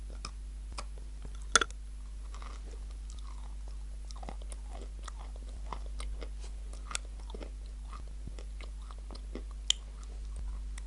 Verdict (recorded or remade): recorded